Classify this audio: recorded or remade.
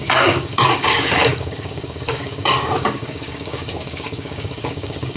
remade